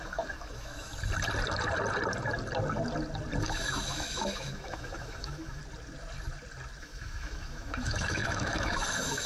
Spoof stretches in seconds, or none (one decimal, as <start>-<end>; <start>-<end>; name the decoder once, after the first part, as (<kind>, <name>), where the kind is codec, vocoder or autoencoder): 0.0-0.9 (autoencoder, DAC-VAE); 3.4-5.6; 6.8-9.3